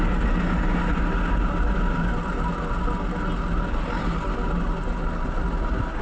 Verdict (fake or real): real